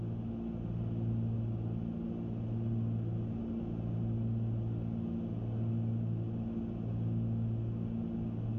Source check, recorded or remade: recorded